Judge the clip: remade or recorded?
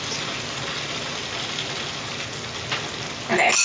recorded